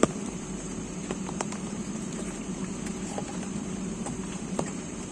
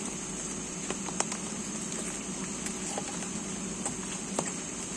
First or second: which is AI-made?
first